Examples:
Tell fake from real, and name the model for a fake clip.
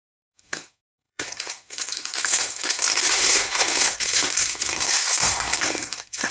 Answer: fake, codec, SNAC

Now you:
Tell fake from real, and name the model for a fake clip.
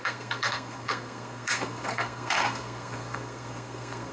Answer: fake, codec, SNAC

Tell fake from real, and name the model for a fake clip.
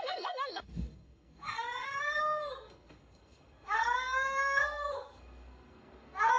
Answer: fake, codec, SNAC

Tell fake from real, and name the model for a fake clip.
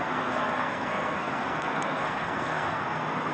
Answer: fake, codec, SNAC